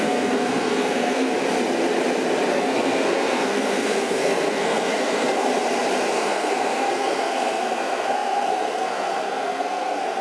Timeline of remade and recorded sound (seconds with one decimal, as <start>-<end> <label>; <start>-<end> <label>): 0.0-1.3 remade; 1.3-2.5 recorded; 2.5-5.5 remade; 5.5-6.1 recorded; 6.1-10.2 remade